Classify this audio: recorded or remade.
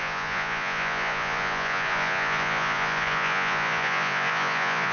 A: remade